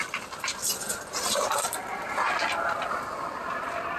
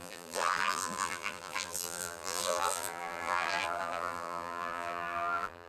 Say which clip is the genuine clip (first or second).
first